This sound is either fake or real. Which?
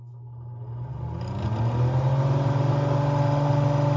real